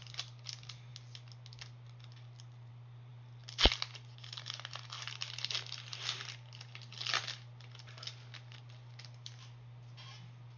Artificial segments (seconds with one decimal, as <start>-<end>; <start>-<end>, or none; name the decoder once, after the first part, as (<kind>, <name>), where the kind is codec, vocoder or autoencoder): none